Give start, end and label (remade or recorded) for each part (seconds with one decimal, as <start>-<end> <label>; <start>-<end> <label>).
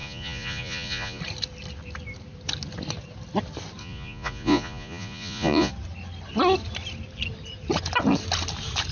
0.0-1.2 remade; 1.2-3.8 recorded; 3.8-5.7 remade; 5.7-8.9 recorded